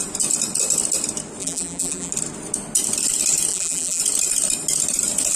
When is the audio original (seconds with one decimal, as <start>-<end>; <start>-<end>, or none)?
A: 0.0-1.4; 2.1-3.5; 4.0-5.4